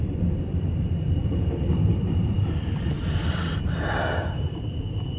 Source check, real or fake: fake